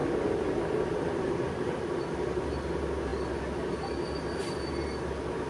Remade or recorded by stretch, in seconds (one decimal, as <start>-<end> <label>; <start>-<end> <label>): 0.0-5.5 recorded